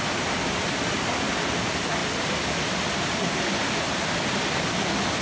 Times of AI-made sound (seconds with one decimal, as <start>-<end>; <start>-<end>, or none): none